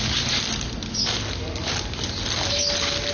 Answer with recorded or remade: recorded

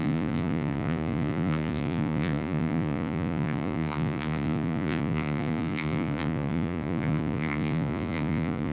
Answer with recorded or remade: remade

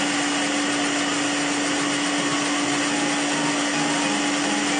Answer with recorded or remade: recorded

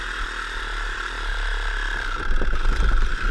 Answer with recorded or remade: recorded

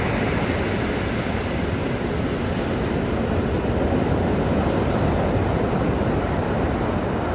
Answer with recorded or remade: recorded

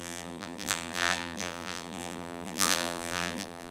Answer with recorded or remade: remade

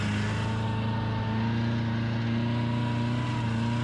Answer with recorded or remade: recorded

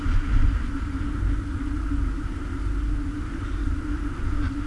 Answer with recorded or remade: recorded